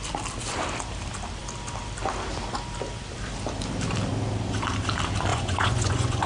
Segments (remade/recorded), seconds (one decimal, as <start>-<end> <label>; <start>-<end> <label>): 0.0-5.3 recorded; 5.3-6.3 remade